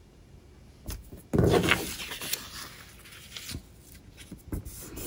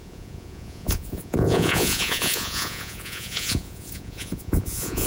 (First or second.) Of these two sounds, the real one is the first